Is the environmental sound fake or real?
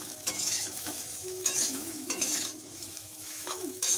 fake